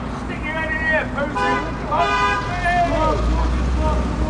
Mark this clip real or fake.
real